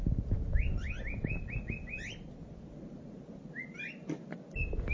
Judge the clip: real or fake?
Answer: real